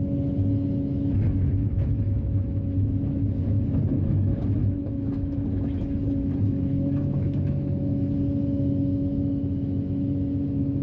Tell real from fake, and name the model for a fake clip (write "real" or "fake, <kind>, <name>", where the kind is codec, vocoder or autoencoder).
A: fake, autoencoder, DAC-VAE